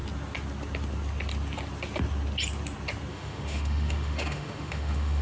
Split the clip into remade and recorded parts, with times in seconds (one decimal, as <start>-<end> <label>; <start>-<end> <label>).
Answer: 0.0-3.1 recorded; 3.1-5.2 remade